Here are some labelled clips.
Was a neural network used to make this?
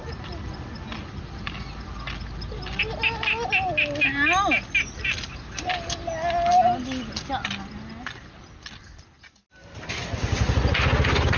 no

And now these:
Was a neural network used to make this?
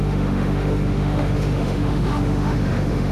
yes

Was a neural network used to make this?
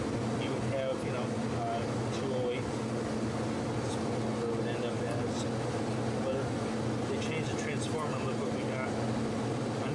no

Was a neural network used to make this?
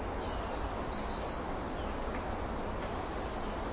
no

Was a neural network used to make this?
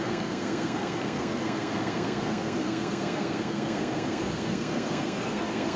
yes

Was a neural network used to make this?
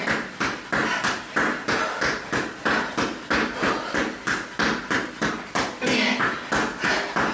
no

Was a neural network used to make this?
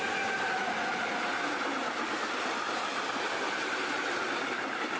no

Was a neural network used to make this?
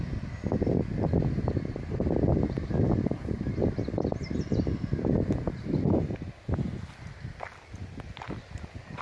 no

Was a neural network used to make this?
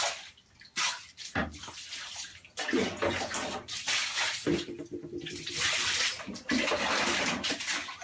no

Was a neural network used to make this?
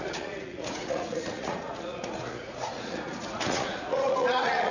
yes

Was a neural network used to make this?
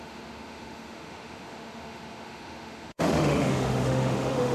yes